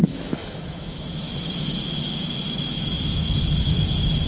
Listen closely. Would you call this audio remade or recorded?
remade